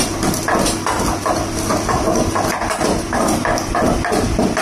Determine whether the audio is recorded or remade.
recorded